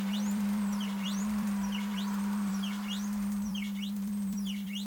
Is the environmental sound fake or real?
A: fake